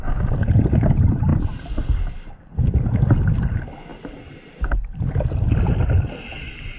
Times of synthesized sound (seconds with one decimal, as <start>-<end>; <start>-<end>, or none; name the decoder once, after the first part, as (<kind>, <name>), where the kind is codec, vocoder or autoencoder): 1.3-2.3 (vocoder, BigVGAN v2)